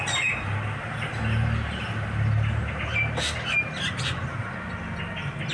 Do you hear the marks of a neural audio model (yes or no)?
no